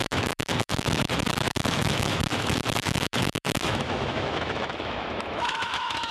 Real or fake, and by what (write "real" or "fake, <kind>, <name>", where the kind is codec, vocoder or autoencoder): fake, autoencoder, DAC-VAE